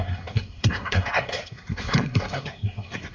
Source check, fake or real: fake